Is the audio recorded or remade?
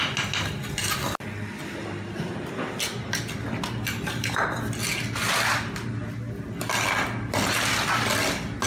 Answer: recorded